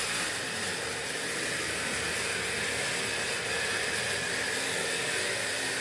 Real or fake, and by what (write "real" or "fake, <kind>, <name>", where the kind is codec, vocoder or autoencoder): real